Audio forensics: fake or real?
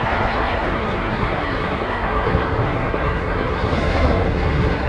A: fake